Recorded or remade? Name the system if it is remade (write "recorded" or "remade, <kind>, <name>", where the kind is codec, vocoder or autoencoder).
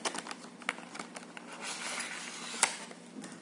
recorded